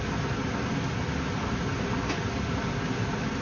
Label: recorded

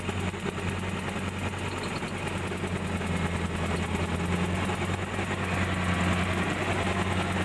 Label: recorded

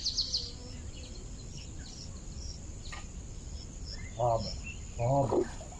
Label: recorded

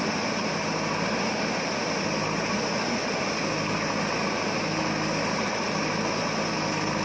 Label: recorded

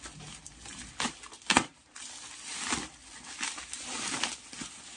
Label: recorded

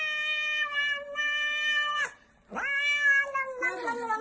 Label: recorded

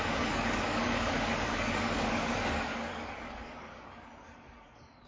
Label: remade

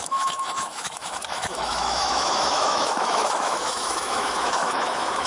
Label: remade